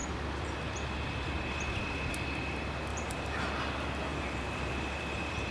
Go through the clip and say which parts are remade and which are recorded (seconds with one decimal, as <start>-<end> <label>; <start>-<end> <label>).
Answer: 0.0-2.9 recorded; 2.9-3.5 remade; 3.5-4.1 recorded; 4.1-5.5 remade